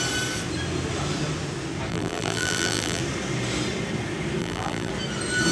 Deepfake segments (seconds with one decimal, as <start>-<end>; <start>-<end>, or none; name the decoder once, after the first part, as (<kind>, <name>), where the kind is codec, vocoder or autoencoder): 1.9-3.0 (vocoder, BigVGAN v2); 4.4-4.9